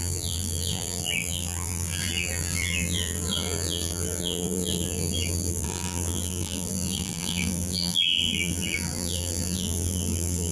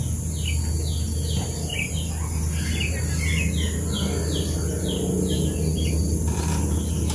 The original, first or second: second